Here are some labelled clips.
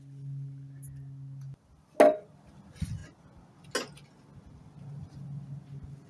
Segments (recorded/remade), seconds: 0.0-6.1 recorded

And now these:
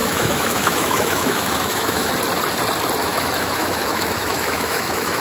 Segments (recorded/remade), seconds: 0.0-2.1 remade; 2.1-3.0 recorded; 3.0-5.2 remade

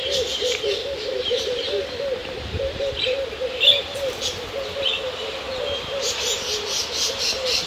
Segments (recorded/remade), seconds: 0.0-2.2 recorded; 2.2-2.9 remade; 2.9-7.7 recorded

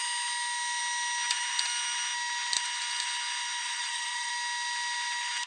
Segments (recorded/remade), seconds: 0.0-3.6 recorded; 3.6-4.3 remade; 4.3-5.5 recorded